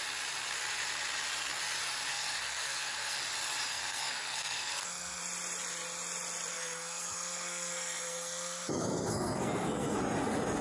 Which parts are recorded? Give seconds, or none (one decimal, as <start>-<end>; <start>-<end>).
0.0-2.1; 3.2-3.7; 5.2-6.5; 10.0-10.6